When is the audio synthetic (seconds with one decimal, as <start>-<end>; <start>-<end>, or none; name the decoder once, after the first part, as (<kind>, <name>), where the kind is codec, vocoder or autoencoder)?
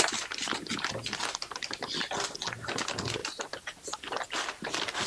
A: none